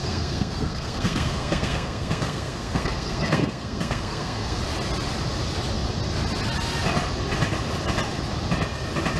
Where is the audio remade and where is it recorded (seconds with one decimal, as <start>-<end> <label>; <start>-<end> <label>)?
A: 0.0-4.6 remade; 4.6-9.2 recorded